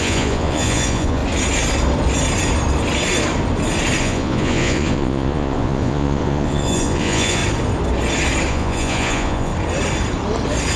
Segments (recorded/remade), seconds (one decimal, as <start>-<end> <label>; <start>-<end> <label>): 0.0-1.2 remade; 1.2-4.0 recorded; 4.0-7.4 remade; 7.4-8.5 recorded; 8.5-9.5 remade; 9.5-10.8 recorded